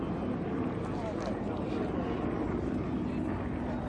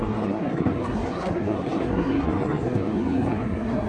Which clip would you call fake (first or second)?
second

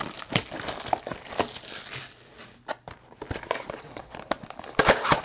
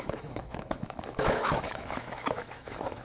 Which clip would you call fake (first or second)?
second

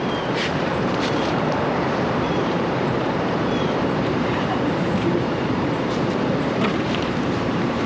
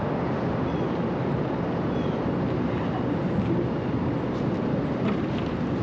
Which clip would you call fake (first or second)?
first